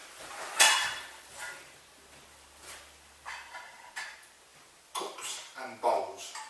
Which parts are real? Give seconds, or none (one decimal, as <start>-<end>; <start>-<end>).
3.9-4.5; 6.0-6.5